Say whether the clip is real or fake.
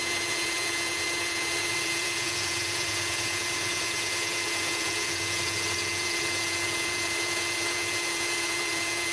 fake